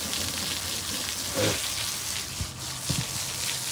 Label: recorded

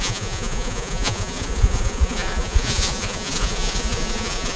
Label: remade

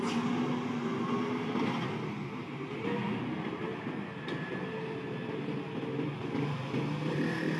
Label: recorded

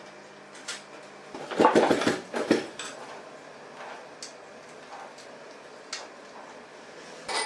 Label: recorded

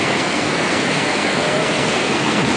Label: remade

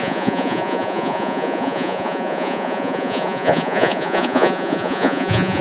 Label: remade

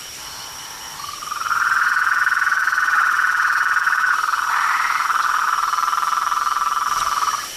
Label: remade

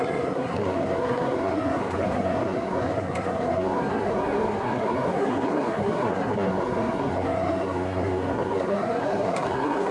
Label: remade